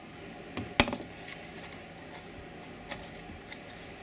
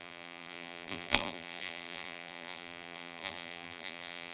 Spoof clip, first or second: second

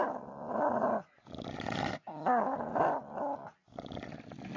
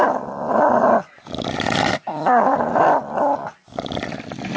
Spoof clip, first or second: second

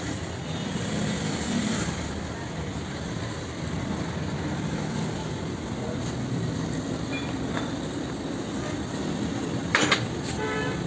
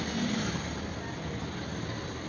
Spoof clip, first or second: first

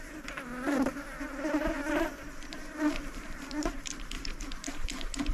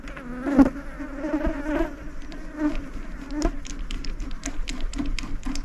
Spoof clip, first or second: first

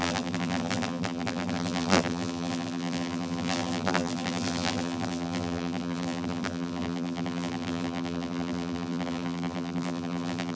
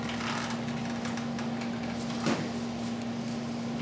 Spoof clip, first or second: first